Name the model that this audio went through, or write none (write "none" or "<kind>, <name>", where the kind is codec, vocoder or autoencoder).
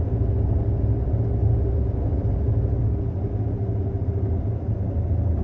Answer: none